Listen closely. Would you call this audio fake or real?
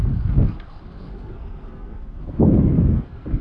fake